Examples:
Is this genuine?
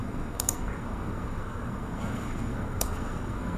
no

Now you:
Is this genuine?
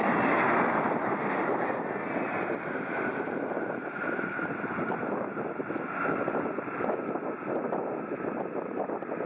yes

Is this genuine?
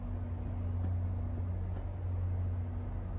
yes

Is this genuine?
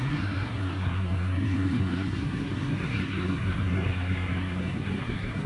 no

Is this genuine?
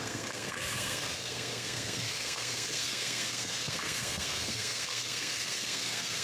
no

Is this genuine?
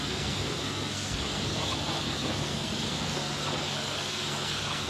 no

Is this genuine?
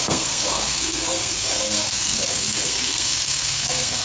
no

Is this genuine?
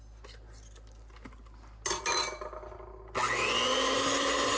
yes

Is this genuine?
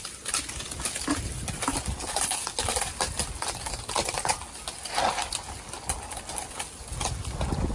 yes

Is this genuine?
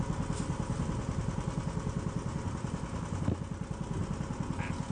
yes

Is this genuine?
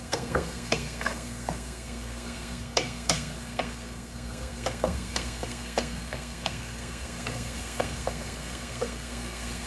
no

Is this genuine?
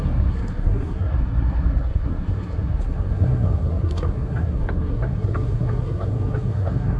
no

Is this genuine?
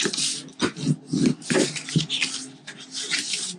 yes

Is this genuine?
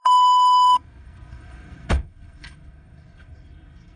no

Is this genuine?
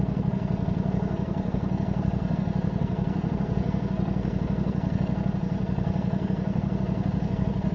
no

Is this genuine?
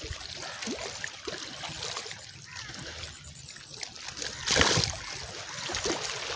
yes